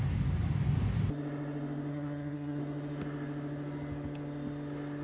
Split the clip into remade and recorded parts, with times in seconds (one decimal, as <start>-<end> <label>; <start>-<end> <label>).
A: 0.0-1.9 recorded; 1.9-2.6 remade; 2.6-5.0 recorded